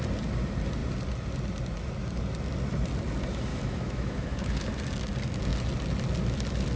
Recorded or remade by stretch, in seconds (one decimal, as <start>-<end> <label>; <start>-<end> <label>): 0.0-3.5 recorded; 3.5-4.7 remade; 4.7-6.8 recorded